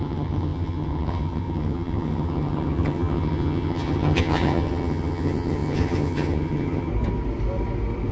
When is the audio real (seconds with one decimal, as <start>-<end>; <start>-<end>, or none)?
6.9-8.1